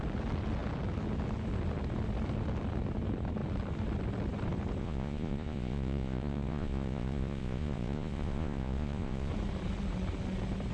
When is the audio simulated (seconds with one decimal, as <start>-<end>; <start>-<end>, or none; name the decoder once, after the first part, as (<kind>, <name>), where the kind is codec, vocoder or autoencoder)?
4.8-9.3 (vocoder, Vocos)